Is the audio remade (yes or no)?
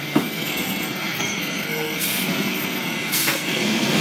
yes